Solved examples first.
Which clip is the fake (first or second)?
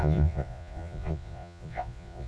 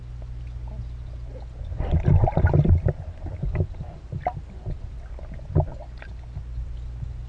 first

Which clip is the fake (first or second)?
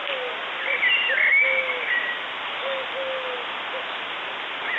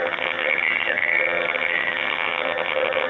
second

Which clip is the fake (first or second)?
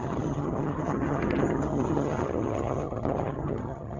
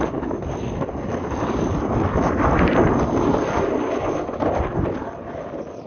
first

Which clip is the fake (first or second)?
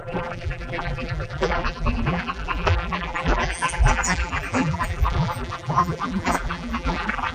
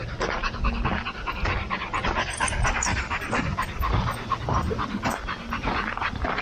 first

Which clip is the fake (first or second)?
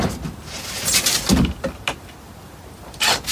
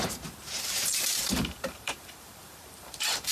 second